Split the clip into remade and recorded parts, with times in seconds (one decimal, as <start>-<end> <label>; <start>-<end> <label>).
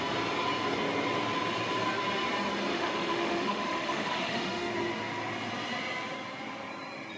0.0-2.7 recorded; 2.7-4.7 remade; 4.7-7.2 recorded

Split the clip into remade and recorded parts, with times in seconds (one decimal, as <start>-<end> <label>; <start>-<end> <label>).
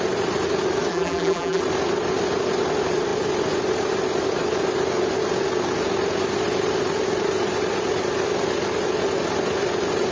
0.0-0.9 recorded; 0.9-1.6 remade; 1.6-10.1 recorded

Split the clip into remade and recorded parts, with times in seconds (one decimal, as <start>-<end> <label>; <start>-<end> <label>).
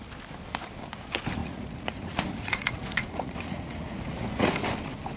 0.0-1.4 recorded; 1.4-4.5 remade; 4.5-5.2 recorded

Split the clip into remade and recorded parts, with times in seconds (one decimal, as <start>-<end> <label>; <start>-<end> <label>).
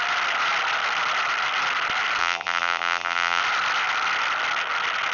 0.0-2.2 recorded; 2.2-3.4 remade; 3.4-5.1 recorded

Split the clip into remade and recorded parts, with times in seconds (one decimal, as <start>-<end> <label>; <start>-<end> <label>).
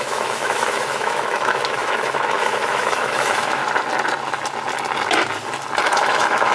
0.0-3.6 remade; 3.6-5.8 recorded; 5.8-6.5 remade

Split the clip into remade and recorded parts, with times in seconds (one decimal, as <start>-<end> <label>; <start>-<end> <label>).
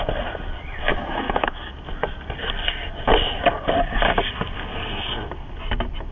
0.0-0.9 recorded; 0.9-1.7 remade; 1.7-6.1 recorded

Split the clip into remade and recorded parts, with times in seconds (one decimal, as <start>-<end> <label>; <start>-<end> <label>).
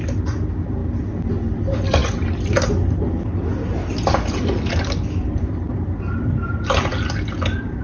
0.0-7.8 recorded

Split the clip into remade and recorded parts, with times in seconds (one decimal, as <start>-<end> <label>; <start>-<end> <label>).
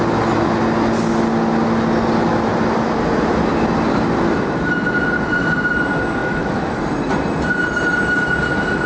0.0-6.2 recorded; 6.2-6.8 remade; 6.8-8.9 recorded